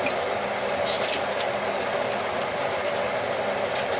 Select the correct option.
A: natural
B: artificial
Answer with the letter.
A